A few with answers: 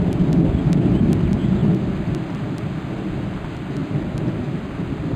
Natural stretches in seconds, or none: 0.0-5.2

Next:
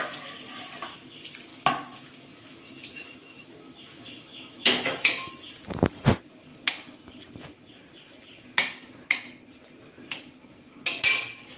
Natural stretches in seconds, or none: 0.0-1.5; 5.3-11.6

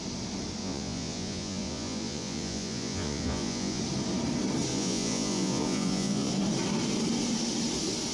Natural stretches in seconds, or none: 0.0-0.6; 3.8-4.7; 6.3-8.1